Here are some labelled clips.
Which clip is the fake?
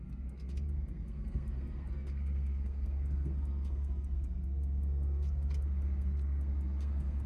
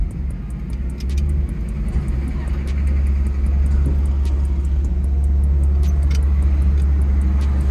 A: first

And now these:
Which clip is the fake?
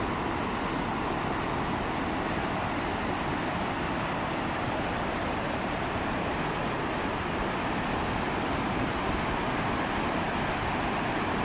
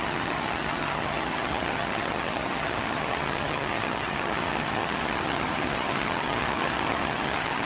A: second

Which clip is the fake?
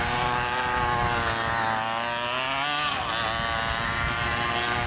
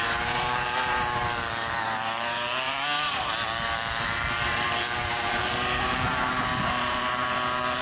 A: second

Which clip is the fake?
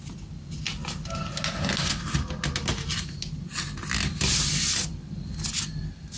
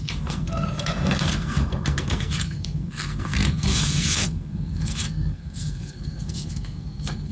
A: second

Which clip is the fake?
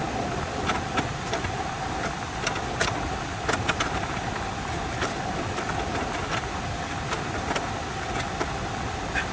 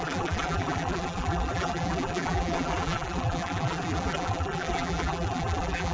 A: second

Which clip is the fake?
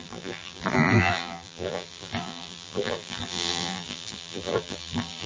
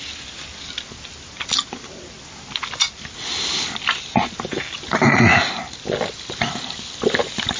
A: first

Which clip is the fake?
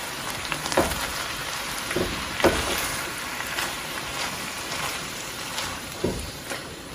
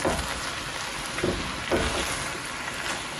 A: first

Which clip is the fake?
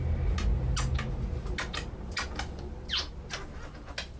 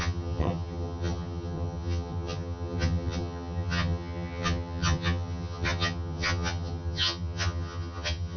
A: second